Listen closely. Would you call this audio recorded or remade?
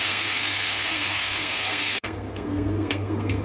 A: remade